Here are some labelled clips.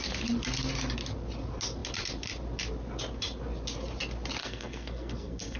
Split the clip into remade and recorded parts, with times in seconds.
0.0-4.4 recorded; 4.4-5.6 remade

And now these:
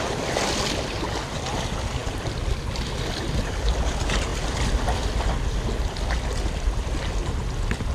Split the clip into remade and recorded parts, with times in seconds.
0.0-7.9 recorded